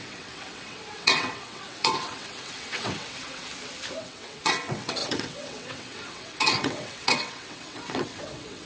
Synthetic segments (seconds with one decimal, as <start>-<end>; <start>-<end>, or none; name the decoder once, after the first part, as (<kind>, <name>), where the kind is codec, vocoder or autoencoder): 0.0-3.5 (vocoder, WaveNeXt); 4.0-8.7